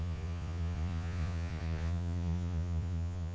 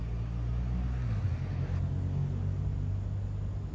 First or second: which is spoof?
first